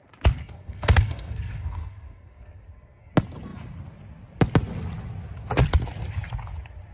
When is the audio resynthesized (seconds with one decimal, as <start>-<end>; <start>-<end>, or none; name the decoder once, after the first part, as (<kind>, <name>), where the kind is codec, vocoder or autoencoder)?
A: 0.4-3.1 (codec, SNAC)